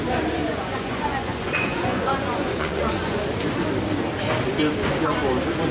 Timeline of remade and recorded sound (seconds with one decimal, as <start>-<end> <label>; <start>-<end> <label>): 0.0-0.4 recorded; 0.4-3.2 remade; 3.2-5.7 recorded